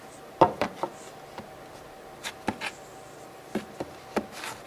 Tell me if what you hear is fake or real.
real